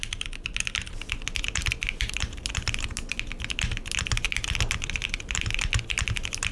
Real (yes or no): yes